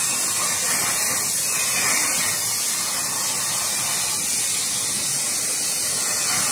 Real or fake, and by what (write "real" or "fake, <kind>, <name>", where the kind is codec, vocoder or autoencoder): real